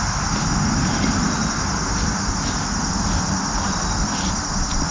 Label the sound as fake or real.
real